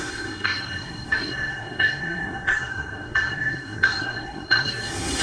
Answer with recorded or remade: remade